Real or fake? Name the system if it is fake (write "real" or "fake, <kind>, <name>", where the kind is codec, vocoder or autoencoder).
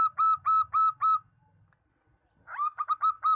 real